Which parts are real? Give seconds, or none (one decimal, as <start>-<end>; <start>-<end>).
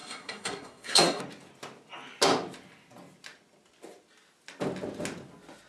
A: 1.2-5.7